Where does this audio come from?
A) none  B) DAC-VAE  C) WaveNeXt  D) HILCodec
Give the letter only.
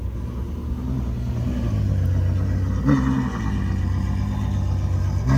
A